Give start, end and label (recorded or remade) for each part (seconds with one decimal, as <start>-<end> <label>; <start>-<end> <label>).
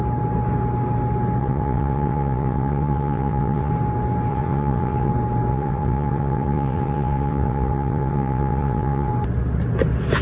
0.0-1.4 recorded; 1.4-3.7 remade; 3.7-4.3 recorded; 4.3-5.1 remade; 5.1-5.5 recorded; 5.5-9.1 remade; 9.1-10.2 recorded